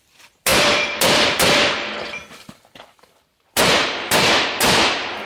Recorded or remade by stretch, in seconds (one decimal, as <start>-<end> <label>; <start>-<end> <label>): 0.0-5.3 remade